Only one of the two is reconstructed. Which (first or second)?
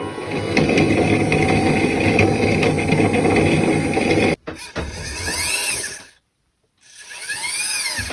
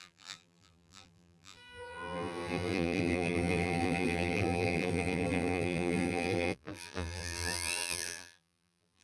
second